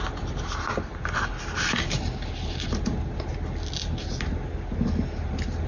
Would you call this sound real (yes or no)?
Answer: yes